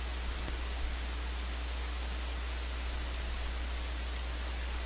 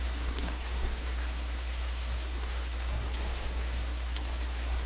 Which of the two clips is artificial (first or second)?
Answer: second